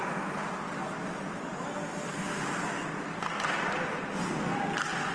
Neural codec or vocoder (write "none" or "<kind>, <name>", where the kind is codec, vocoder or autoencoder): none